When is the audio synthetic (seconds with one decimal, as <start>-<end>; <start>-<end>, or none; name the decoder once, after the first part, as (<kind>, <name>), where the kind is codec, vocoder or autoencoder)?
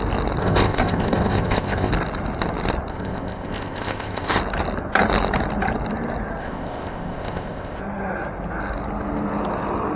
0.4-1.9 (codec, ZipCodec); 2.9-4.4; 6.4-7.8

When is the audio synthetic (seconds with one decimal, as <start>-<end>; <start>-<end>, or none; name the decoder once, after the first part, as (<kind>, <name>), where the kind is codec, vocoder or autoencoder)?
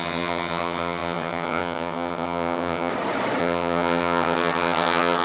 0.0-2.9 (vocoder, HiFi-GAN); 3.4-5.2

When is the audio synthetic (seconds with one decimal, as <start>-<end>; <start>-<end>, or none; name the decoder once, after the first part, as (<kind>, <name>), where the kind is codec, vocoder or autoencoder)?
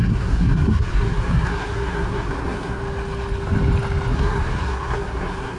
0.0-2.8 (codec, SNAC); 4.1-5.6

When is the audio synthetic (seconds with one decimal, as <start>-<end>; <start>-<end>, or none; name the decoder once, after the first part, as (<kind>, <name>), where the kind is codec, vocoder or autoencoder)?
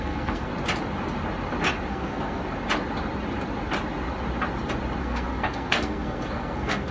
0.0-0.5 (codec, SNAC); 1.9-2.4; 5.0-6.9